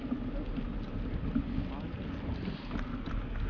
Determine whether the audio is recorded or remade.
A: recorded